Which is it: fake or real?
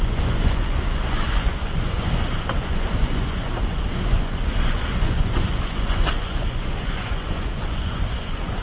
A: fake